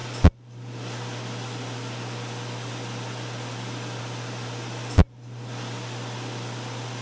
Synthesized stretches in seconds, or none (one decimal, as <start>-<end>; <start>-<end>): none